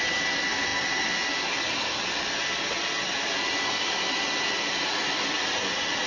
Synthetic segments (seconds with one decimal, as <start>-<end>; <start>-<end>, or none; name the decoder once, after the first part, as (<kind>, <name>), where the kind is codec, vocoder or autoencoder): none